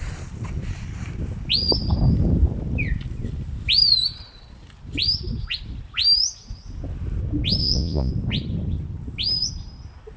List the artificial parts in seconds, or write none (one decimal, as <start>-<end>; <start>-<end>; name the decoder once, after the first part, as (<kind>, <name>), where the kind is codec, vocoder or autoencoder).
7.6-8.1 (vocoder, Vocos)